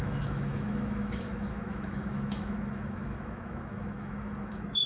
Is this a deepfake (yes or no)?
yes